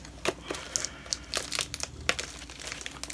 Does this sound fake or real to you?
real